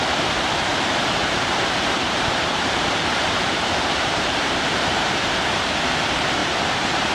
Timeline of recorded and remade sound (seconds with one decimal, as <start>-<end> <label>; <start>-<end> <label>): 0.0-1.2 recorded; 1.2-5.4 remade; 5.4-6.4 recorded; 6.4-7.1 remade